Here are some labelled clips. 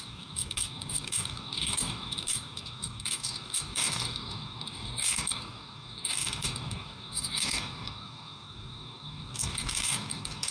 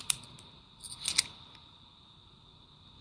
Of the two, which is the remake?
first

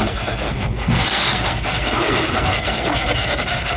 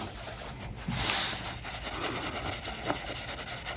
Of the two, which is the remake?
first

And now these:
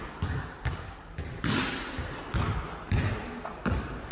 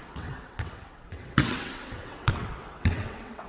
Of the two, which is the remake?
second